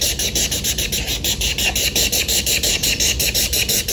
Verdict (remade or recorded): remade